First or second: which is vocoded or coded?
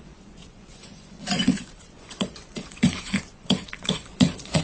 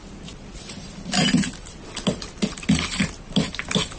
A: first